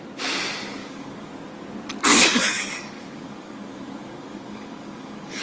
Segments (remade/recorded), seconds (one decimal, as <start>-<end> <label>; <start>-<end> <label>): 0.0-0.8 recorded; 0.8-1.3 remade; 1.3-2.1 recorded; 2.1-5.4 remade